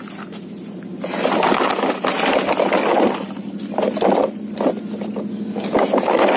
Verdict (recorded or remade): recorded